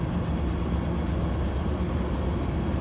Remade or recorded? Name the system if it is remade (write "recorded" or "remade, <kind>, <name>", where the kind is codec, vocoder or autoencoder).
recorded